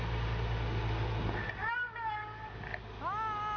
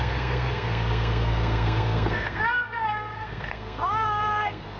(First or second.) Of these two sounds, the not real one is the second